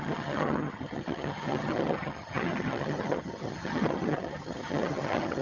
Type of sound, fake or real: fake